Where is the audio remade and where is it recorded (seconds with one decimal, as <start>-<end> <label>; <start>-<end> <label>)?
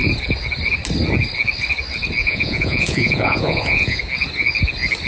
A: 0.0-2.2 recorded; 2.2-4.0 remade; 4.0-5.1 recorded